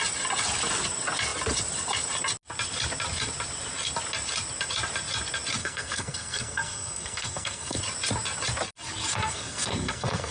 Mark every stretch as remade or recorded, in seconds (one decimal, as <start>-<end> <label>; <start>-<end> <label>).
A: 0.0-5.6 recorded; 5.6-7.8 remade; 7.8-9.1 recorded; 9.1-10.3 remade

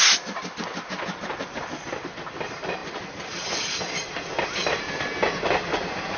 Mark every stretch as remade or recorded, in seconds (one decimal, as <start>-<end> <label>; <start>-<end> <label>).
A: 0.0-6.2 recorded

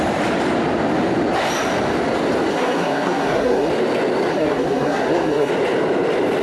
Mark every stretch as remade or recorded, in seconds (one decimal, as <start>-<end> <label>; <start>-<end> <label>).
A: 0.0-2.5 recorded; 2.5-3.7 remade; 3.7-4.3 recorded; 4.3-5.5 remade; 5.5-6.4 recorded

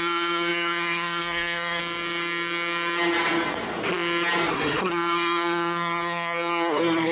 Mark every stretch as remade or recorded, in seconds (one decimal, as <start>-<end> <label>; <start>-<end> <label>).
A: 0.0-1.8 remade; 1.8-4.5 recorded; 4.5-7.1 remade

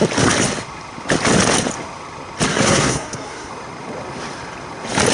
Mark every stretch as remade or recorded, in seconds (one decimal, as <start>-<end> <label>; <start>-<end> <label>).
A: 0.0-2.5 recorded; 2.5-3.5 remade; 3.5-5.1 recorded

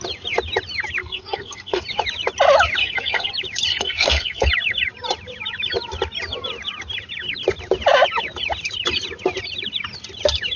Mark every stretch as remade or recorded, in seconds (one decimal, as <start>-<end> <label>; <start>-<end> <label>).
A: 0.0-1.0 recorded; 1.0-1.8 remade; 1.8-2.8 recorded; 2.8-3.3 remade; 3.3-3.7 recorded; 3.7-4.5 remade; 4.5-10.6 recorded

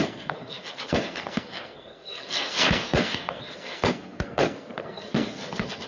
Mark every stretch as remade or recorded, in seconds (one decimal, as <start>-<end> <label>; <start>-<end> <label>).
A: 0.0-5.9 remade